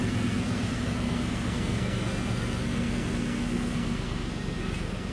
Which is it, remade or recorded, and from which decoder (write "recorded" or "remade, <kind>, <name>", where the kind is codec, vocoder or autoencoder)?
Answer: remade, codec, SNAC